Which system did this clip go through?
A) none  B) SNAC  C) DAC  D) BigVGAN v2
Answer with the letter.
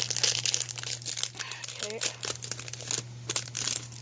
A